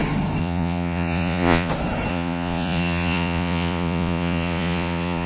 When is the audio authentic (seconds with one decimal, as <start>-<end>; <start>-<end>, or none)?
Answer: 0.0-0.4; 1.7-2.1